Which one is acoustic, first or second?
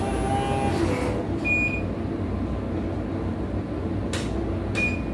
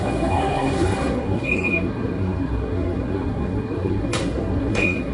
first